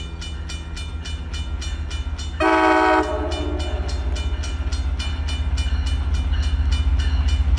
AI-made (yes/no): no